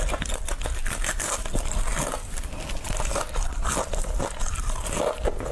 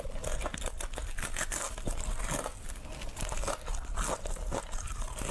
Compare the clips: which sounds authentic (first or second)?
second